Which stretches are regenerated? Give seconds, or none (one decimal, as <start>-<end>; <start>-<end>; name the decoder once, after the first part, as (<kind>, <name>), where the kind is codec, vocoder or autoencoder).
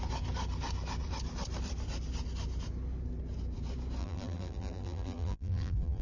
4.0-6.0 (vocoder, BigVGAN v2)